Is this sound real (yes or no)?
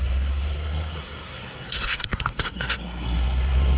no